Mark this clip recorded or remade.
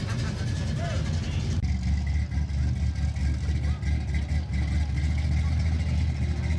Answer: recorded